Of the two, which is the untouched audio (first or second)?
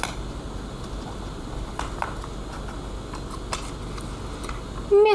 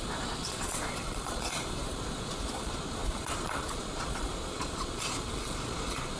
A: first